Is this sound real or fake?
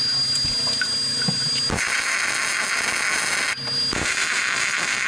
real